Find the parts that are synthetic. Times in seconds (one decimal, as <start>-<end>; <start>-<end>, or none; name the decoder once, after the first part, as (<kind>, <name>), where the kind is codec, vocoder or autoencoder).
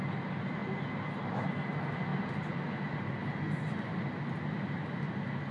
none